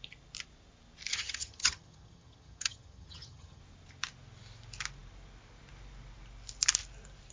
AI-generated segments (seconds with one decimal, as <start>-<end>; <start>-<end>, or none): 1.1-3.6